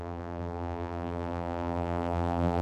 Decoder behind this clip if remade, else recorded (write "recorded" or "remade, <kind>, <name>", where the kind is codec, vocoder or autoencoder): remade, vocoder, BigVGAN v2